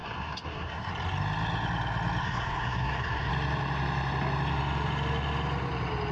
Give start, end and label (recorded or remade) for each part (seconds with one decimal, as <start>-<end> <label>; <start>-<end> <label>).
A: 0.0-0.9 remade; 0.9-2.2 recorded; 2.2-3.3 remade; 3.3-6.1 recorded